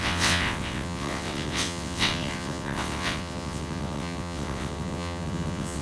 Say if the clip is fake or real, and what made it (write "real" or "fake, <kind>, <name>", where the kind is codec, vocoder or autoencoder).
fake, vocoder, WaveNeXt